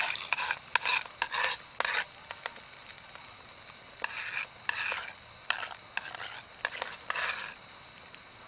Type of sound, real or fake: real